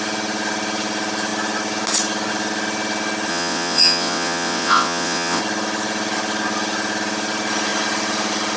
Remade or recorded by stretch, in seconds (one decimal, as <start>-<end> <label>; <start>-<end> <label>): 0.0-3.3 recorded; 3.3-5.4 remade; 5.4-8.6 recorded